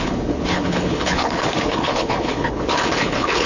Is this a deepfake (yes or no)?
yes